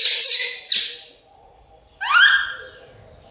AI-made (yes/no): no